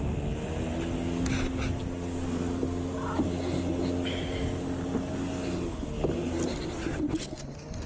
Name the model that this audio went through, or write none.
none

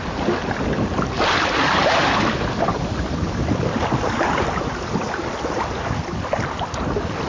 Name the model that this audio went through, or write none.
vocoder, BigVGAN v2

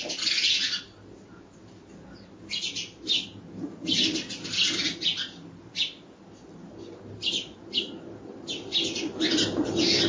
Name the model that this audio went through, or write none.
none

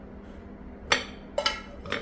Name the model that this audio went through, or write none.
none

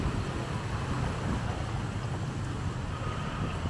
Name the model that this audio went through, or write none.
none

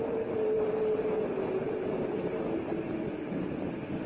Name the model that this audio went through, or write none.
none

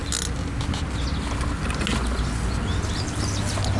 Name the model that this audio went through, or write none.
none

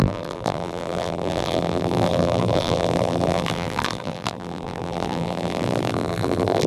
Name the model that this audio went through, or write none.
vocoder, BigVGAN v2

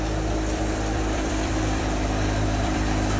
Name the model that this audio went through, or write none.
vocoder, BigVGAN v2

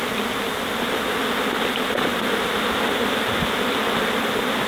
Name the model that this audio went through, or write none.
none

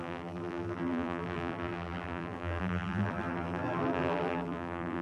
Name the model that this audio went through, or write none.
vocoder, BigVGAN v2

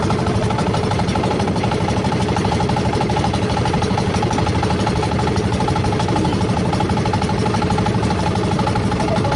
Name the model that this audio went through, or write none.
none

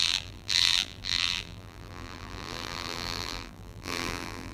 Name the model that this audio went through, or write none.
vocoder, BigVGAN v2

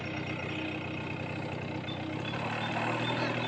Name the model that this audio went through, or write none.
none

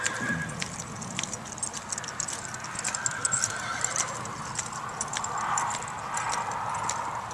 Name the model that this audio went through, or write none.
none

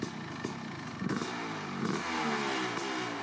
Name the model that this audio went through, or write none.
none